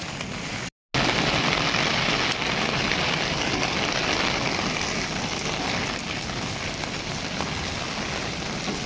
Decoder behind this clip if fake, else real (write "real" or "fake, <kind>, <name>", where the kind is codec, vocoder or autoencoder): real